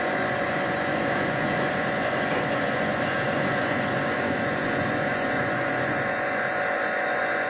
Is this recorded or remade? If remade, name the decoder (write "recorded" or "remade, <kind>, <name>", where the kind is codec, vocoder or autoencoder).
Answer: remade, vocoder, Vocos